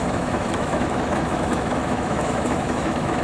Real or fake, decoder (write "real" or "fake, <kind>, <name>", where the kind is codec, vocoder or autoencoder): fake, autoencoder, DAC-VAE